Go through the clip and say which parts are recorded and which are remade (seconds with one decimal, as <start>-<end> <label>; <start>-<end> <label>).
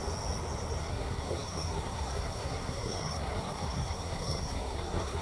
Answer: 0.0-0.8 recorded; 0.8-5.2 remade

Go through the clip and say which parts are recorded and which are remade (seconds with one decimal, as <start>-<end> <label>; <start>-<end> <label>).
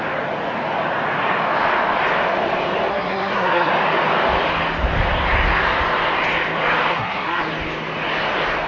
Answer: 0.0-2.9 recorded; 2.9-3.7 remade; 3.7-6.9 recorded; 6.9-7.4 remade; 7.4-8.7 recorded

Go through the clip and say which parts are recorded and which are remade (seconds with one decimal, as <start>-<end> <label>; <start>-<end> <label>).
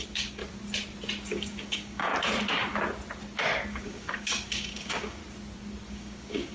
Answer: 0.0-0.4 remade; 0.4-1.3 recorded; 1.3-2.1 remade; 2.1-3.7 recorded; 3.7-5.2 remade; 5.2-5.9 recorded; 5.9-6.5 remade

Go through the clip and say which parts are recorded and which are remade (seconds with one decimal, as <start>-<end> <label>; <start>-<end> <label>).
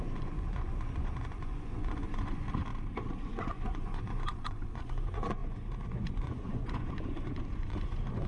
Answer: 0.0-2.7 remade; 2.7-3.3 recorded; 3.3-8.3 remade